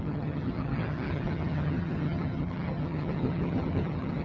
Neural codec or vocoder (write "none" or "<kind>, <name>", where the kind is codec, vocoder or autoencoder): vocoder, HiFi-GAN